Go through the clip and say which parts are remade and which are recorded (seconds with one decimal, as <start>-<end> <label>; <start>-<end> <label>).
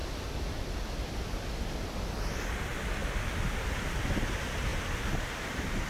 0.0-4.7 recorded; 4.7-5.9 remade